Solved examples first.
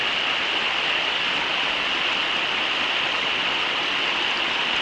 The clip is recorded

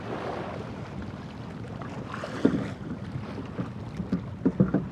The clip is recorded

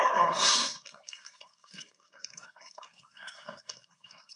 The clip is remade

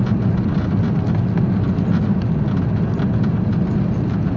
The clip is recorded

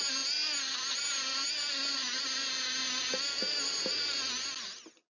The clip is recorded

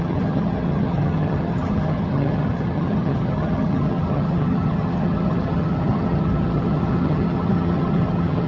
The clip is remade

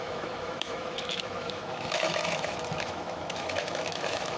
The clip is remade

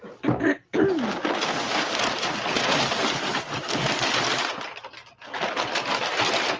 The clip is recorded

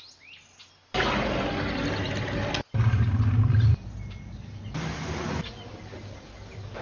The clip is recorded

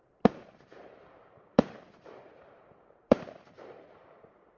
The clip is remade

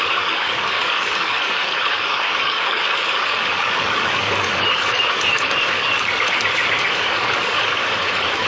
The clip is remade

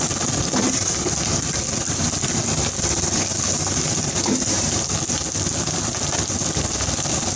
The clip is recorded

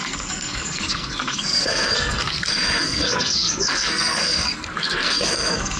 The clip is remade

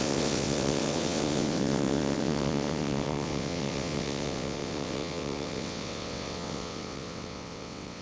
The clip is remade